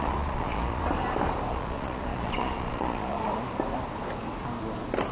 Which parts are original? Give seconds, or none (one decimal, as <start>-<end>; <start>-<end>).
0.8-1.5; 3.2-5.1